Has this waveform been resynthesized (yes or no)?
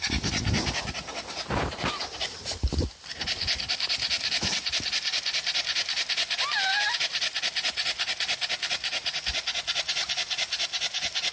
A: no